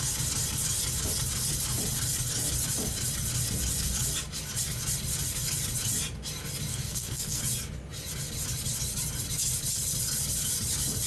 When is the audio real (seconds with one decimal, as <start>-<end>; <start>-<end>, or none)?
0.0-6.7; 7.4-11.1